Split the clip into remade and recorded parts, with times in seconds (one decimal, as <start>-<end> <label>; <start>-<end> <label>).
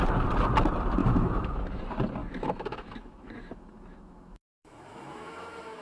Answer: 0.0-1.0 recorded; 1.0-1.8 remade; 1.8-2.2 recorded; 2.2-5.8 remade